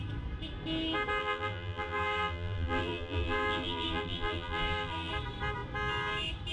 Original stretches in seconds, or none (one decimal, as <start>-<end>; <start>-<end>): 0.0-1.2; 5.1-6.5